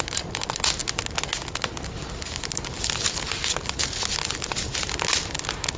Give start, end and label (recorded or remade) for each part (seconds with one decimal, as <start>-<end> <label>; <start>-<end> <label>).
0.0-5.8 recorded